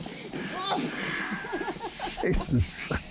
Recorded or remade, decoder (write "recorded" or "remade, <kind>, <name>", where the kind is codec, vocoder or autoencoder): recorded